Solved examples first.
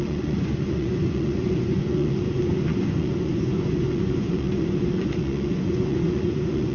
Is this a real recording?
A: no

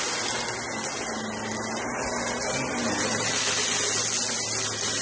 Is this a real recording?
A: yes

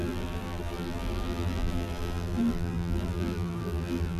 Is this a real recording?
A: no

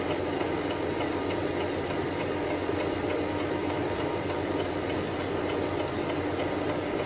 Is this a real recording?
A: yes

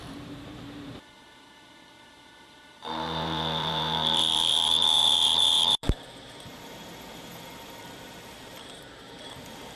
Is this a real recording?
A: no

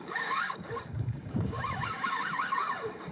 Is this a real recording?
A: no